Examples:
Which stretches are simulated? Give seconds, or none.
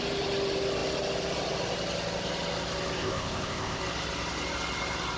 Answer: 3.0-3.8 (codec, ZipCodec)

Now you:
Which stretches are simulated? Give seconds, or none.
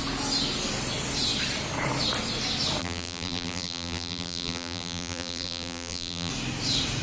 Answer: 2.8-6.3 (vocoder, BigVGAN v2)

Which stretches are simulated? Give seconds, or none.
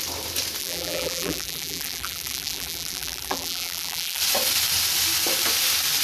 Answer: 0.6-4.2 (vocoder, BigVGAN v2)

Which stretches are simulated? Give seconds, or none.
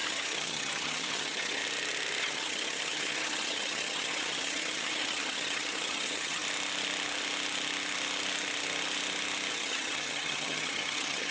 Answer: 0.0-1.6 (vocoder, HiFi-GAN); 2.2-6.4; 9.5-11.3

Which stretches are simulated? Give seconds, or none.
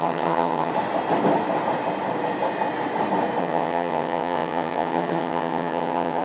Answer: 0.0-0.7 (vocoder, HiFi-GAN); 3.4-6.2